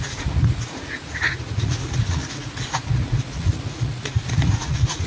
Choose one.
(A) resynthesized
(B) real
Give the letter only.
A